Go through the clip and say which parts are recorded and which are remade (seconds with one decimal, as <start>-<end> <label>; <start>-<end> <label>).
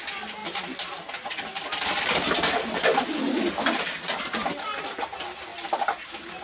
0.0-6.4 recorded